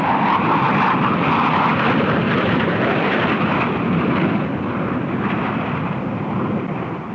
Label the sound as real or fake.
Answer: fake